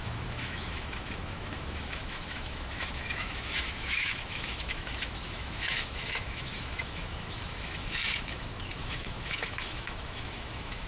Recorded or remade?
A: remade